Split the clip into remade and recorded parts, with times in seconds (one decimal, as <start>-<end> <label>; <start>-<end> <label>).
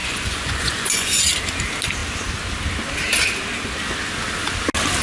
0.0-1.2 remade; 1.2-5.0 recorded